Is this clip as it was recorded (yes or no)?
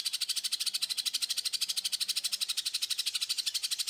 yes